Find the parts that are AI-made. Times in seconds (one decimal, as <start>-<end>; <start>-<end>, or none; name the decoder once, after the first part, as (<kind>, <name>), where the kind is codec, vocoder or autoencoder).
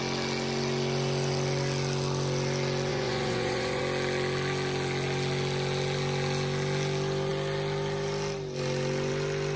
2.9-3.8 (vocoder, Vocos)